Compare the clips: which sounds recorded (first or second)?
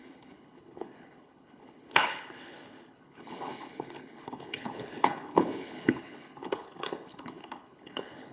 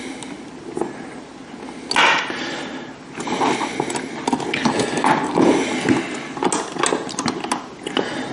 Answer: second